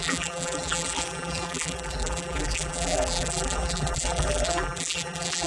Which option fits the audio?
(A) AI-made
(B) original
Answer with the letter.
A